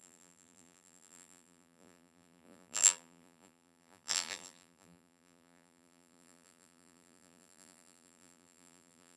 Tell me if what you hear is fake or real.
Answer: fake